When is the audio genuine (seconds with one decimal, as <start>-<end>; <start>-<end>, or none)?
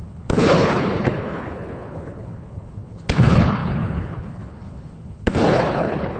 none